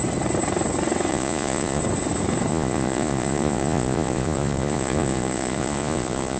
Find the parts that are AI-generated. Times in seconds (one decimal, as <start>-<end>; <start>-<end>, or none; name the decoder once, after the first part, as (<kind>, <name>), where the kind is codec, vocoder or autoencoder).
1.1-1.8 (vocoder, Vocos); 2.5-6.4